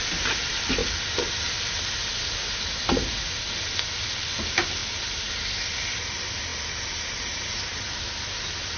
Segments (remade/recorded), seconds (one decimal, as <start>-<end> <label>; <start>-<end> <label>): 0.0-8.8 recorded